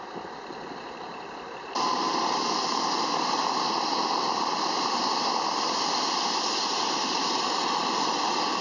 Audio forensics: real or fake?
fake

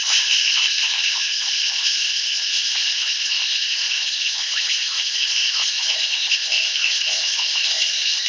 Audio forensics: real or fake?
fake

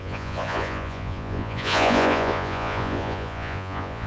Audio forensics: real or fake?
fake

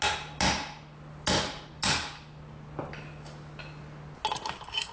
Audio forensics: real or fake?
real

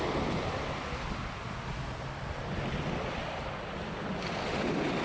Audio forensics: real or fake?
real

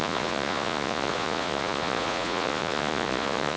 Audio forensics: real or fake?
fake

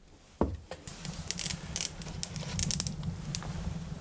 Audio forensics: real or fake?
real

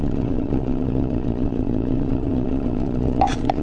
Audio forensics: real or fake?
fake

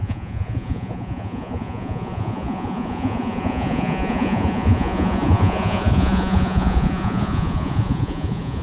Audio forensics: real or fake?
fake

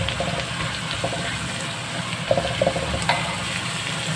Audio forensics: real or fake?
real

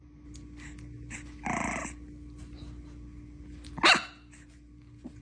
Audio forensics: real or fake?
real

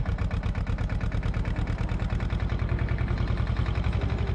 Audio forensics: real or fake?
real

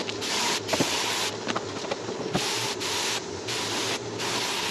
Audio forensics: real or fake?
real